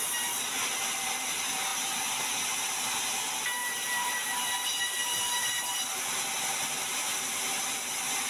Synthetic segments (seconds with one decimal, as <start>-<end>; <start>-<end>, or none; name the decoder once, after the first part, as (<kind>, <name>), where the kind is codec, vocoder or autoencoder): 3.6-5.6 (vocoder, BigVGAN v2)